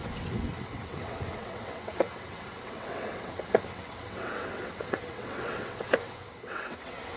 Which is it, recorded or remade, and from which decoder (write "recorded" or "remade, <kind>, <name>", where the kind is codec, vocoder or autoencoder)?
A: remade, vocoder, WaveNeXt